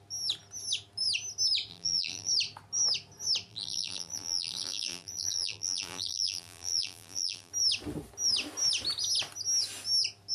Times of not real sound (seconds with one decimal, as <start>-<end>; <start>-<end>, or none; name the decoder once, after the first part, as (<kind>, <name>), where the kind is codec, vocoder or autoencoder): 1.7-2.3 (vocoder, BigVGAN v2); 3.5-7.5